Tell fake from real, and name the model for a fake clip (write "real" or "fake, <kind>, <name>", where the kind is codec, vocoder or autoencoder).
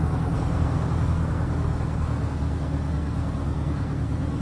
fake, codec, SNAC